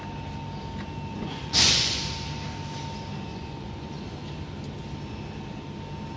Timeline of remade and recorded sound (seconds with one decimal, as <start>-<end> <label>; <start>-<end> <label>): 0.0-1.1 recorded; 1.1-2.0 remade; 2.0-3.3 recorded; 3.3-4.0 remade; 4.0-6.2 recorded